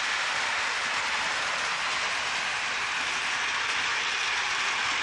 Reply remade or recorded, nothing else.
recorded